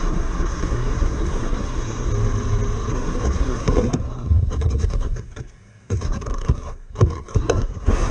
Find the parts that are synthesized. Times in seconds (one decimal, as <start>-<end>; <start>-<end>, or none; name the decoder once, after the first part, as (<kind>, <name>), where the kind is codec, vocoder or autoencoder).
0.0-2.1 (codec, SNAC); 2.9-8.1